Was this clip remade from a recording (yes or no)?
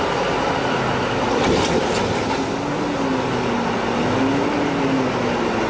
no